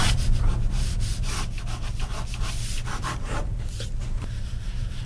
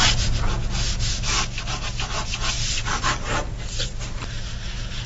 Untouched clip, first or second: second